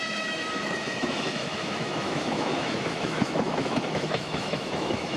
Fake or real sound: fake